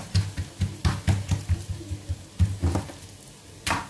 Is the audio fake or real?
real